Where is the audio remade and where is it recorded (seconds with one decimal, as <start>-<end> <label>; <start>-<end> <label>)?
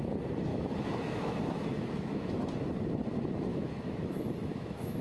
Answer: 0.0-0.5 recorded; 0.5-2.4 remade; 2.4-3.5 recorded; 3.5-5.0 remade